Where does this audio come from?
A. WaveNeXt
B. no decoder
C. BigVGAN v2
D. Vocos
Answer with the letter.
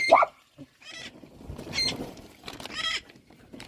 C